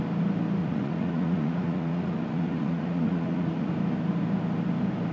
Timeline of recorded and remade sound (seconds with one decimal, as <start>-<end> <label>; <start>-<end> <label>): 0.0-0.6 recorded; 0.6-3.7 remade; 3.7-5.1 recorded